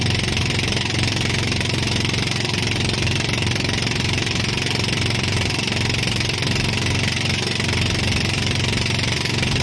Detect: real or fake fake